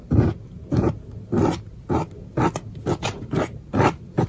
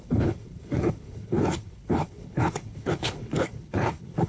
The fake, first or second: second